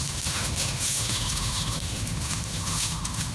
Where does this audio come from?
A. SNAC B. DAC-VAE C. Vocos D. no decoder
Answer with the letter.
B